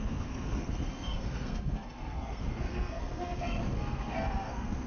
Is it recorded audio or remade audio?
remade